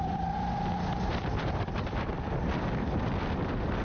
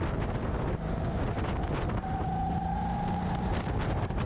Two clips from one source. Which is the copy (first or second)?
first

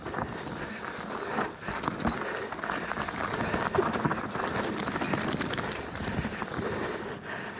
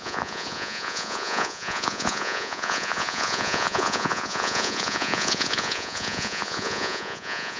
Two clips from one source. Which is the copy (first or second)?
second